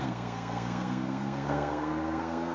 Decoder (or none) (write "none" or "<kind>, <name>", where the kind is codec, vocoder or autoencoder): codec, SNAC